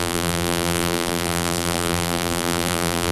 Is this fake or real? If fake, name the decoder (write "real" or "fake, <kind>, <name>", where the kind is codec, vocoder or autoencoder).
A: fake, vocoder, BigVGAN v2